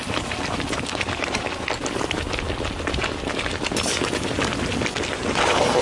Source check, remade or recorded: recorded